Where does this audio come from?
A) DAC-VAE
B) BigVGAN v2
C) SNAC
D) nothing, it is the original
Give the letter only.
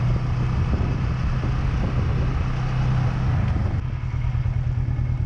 D